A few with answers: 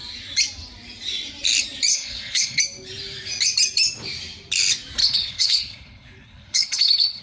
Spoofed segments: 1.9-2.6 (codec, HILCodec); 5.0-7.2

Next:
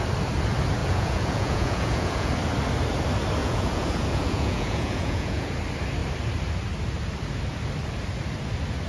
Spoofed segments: 0.8-2.3 (vocoder, Vocos); 3.4-5.5

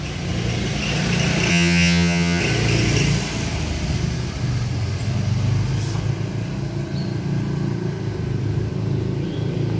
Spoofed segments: 1.5-2.4 (vocoder, HiFi-GAN)